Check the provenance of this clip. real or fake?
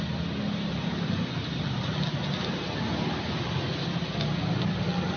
real